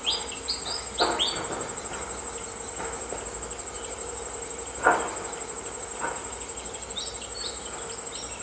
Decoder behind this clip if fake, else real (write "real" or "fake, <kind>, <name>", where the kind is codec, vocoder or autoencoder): real